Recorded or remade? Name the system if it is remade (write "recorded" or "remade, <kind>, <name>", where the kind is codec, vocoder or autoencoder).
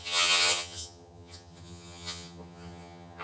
remade, vocoder, HiFi-GAN